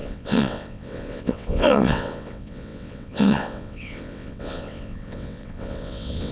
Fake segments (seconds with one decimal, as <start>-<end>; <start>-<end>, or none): 0.0-6.3